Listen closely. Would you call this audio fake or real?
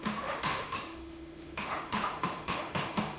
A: fake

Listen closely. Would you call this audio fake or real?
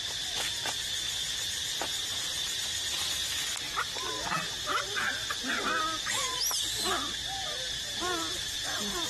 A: real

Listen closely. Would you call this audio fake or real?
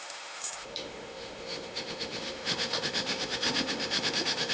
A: fake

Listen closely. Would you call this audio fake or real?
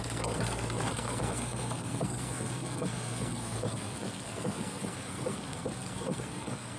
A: fake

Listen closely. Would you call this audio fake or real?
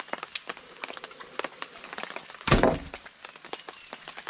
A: real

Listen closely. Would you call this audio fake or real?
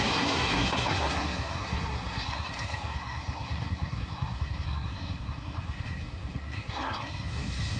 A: fake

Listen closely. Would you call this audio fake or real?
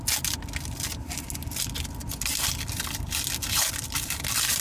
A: real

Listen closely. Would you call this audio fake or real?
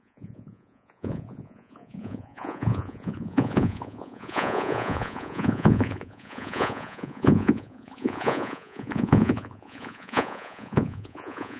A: fake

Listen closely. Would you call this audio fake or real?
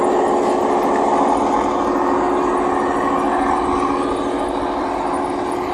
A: real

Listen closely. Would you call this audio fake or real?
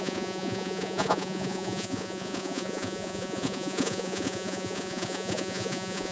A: fake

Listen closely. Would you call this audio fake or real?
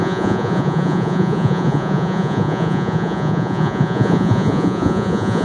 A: fake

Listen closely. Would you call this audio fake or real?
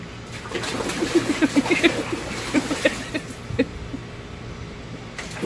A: real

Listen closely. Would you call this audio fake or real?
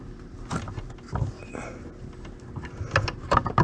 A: real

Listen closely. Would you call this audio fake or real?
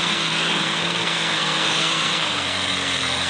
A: fake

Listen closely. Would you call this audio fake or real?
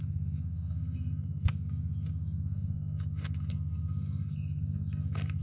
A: fake